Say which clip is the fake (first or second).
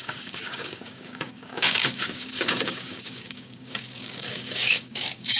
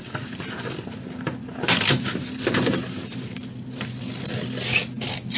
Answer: first